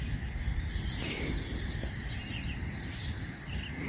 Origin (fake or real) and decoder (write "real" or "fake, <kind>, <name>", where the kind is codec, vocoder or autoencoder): real